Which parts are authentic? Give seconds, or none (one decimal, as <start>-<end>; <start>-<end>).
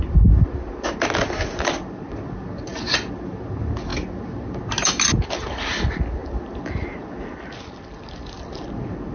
0.0-9.1